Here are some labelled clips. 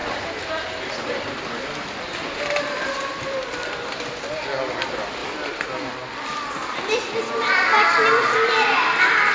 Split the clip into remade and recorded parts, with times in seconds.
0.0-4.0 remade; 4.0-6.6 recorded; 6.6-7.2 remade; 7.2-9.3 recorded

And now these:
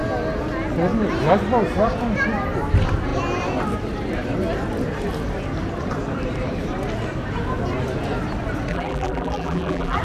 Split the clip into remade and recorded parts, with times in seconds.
0.0-8.7 recorded; 8.7-10.0 remade